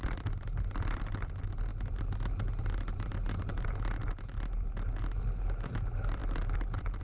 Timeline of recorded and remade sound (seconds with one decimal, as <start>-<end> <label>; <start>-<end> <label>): 0.0-7.0 recorded